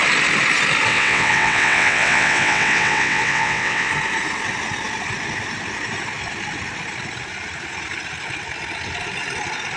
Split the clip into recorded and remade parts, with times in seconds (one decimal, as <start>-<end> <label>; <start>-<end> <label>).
0.0-0.9 recorded; 0.9-3.9 remade; 3.9-9.8 recorded